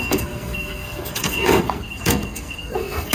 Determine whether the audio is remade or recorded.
remade